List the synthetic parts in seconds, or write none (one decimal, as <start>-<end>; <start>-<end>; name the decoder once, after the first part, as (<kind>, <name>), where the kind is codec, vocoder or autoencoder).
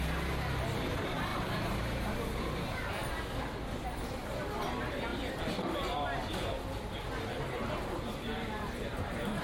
1.3-2.1 (vocoder, BigVGAN v2)